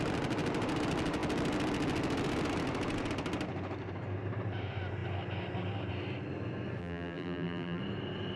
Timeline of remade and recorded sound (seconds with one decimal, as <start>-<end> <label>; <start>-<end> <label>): 0.0-6.8 recorded; 6.8-7.8 remade; 7.8-8.4 recorded